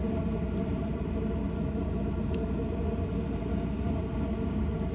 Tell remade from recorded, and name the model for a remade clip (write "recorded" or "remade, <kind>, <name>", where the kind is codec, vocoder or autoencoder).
remade, vocoder, BigVGAN v2